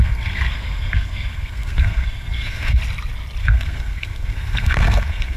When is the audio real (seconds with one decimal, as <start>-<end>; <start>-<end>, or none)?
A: 2.8-3.4